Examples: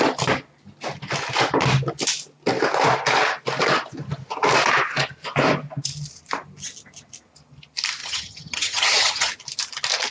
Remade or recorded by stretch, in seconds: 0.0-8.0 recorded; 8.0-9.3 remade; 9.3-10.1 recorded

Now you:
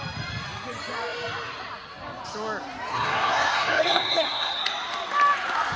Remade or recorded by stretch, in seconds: 0.0-2.9 recorded; 2.9-4.5 remade; 4.5-5.8 recorded

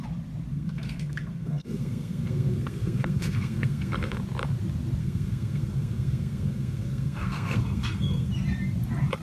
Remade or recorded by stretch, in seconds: 0.0-0.5 recorded; 0.5-4.2 remade; 4.2-5.0 recorded; 5.0-8.3 remade; 8.3-9.2 recorded

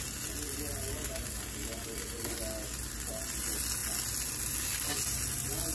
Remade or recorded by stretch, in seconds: 0.0-5.7 recorded

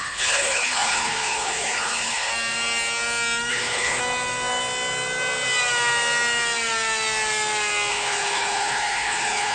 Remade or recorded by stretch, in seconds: 0.0-2.3 remade; 2.3-3.5 recorded; 3.5-4.0 remade; 4.0-7.9 recorded; 7.9-9.5 remade

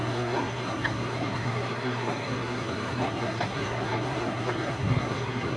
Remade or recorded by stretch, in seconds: 0.0-5.6 remade